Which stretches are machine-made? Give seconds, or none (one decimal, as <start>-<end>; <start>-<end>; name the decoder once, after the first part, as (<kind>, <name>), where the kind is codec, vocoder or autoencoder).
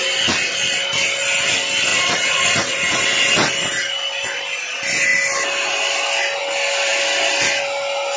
1.9-3.0 (vocoder, Vocos)